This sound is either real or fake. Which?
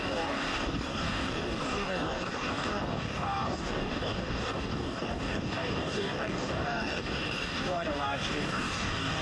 fake